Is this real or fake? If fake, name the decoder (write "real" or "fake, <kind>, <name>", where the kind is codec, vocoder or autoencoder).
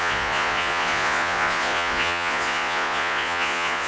fake, vocoder, Vocos